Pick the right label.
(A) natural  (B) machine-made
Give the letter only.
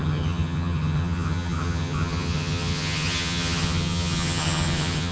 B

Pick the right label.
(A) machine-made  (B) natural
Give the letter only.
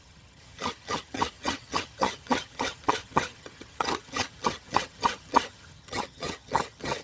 A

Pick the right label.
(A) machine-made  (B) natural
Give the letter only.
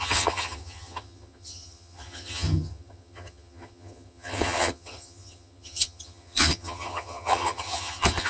A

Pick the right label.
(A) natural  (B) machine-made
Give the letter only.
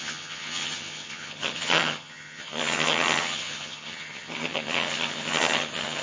B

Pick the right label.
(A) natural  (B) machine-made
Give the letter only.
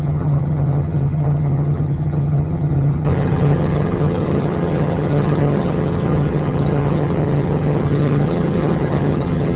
B